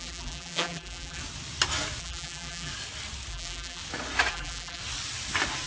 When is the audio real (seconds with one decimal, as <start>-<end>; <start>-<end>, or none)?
1.2-2.0; 2.7-3.3; 3.8-4.3; 4.8-5.7